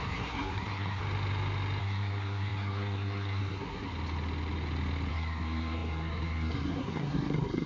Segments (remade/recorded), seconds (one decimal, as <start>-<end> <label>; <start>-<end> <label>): 0.0-1.0 remade; 1.0-1.8 recorded; 1.8-3.9 remade; 3.9-5.1 recorded; 5.1-7.7 remade